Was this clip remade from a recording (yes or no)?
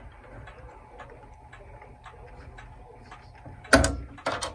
no